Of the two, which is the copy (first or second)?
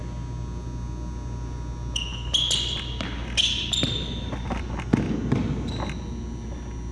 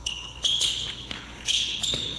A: second